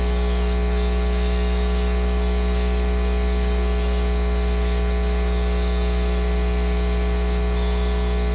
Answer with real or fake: real